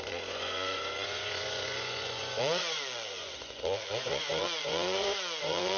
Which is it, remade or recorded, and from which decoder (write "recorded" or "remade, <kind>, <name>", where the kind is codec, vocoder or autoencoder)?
remade, vocoder, Vocos